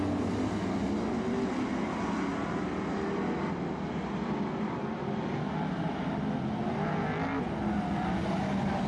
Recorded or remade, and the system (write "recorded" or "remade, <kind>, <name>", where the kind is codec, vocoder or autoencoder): recorded